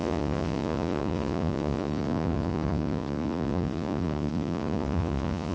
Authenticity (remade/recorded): remade